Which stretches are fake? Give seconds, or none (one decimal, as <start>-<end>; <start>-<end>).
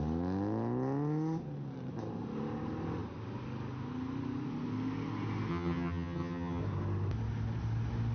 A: 5.5-6.6